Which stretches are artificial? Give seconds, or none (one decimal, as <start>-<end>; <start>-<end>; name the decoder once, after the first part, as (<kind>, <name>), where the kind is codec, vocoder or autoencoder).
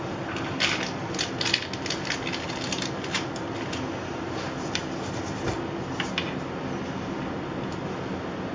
none